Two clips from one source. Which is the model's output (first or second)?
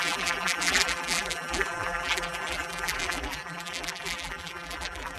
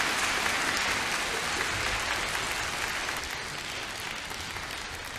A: first